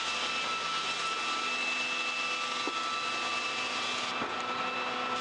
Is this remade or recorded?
recorded